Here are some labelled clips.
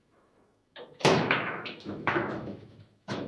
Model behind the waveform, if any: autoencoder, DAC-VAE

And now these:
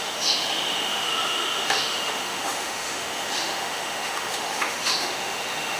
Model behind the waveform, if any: autoencoder, DAC-VAE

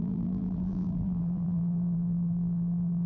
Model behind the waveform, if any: vocoder, BigVGAN v2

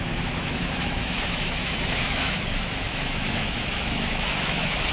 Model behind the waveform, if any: autoencoder, DAC-VAE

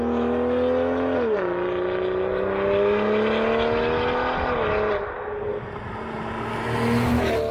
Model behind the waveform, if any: none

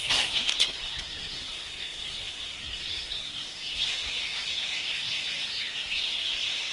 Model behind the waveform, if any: codec, SNAC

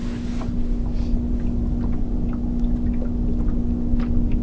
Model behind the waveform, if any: none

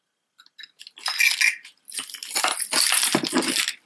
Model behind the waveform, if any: none